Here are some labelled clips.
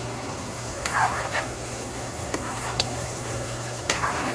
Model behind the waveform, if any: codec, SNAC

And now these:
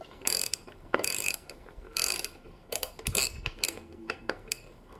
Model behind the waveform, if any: codec, SNAC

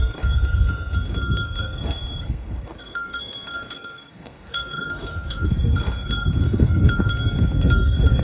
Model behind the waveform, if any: codec, SNAC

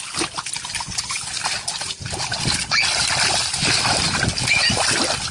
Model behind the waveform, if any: none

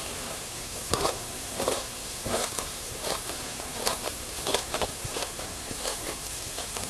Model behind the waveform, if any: codec, SNAC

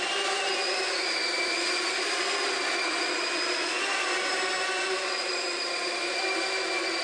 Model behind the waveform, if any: none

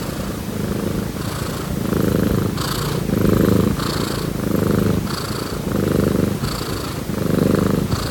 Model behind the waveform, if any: none